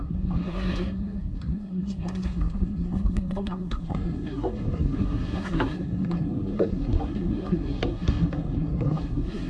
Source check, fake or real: fake